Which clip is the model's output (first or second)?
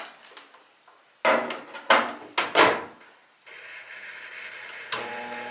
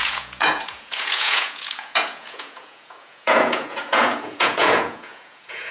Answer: second